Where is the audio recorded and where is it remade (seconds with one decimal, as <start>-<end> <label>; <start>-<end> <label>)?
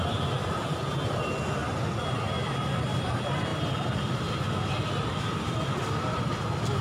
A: 0.0-0.4 remade; 0.4-1.1 recorded; 1.1-1.6 remade; 1.6-2.1 recorded; 2.1-6.8 remade